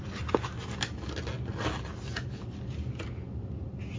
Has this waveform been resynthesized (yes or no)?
no